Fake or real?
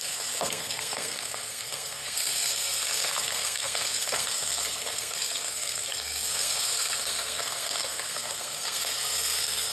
fake